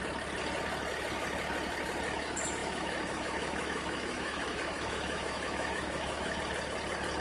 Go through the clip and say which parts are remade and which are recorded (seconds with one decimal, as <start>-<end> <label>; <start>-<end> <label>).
0.0-2.6 recorded; 2.6-6.4 remade; 6.4-7.2 recorded